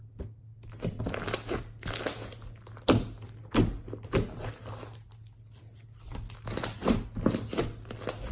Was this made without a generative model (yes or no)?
yes